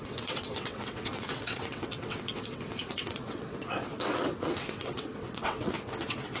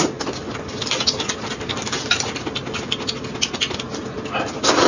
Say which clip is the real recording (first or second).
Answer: second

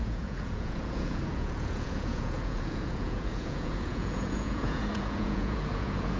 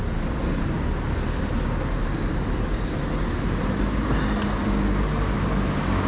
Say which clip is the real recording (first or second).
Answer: second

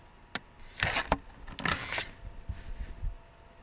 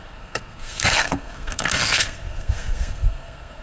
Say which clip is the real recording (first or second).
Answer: first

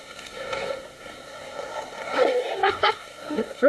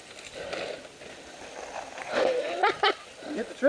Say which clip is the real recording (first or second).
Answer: second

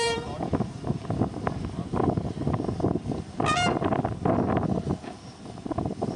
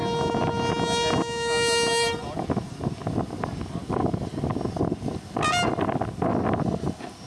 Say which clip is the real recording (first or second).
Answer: second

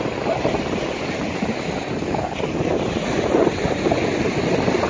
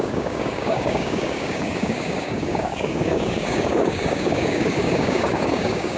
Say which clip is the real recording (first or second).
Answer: first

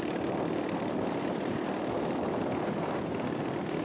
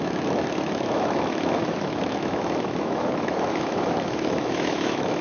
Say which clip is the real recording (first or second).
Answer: first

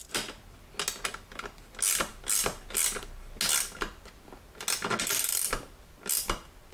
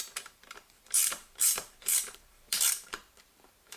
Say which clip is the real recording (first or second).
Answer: first